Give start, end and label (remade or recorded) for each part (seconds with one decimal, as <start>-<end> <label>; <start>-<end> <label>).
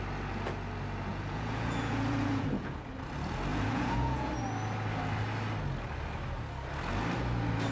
0.0-1.1 recorded; 1.1-2.9 remade; 2.9-3.5 recorded; 3.5-4.3 remade; 4.3-7.7 recorded